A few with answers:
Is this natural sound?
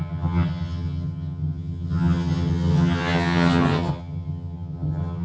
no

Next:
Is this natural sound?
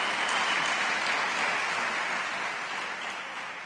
yes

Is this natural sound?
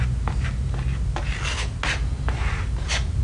yes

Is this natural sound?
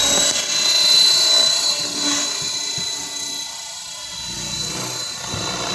yes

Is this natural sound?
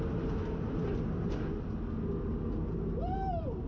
yes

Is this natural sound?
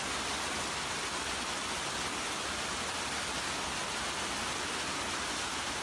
yes